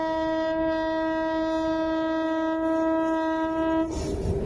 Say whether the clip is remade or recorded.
recorded